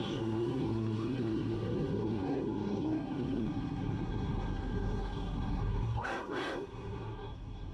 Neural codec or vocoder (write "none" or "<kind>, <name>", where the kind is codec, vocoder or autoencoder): codec, SNAC